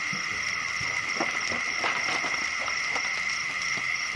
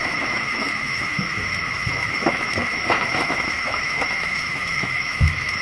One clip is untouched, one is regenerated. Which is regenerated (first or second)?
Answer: second